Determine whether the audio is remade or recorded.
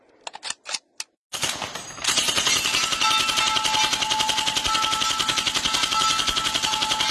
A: recorded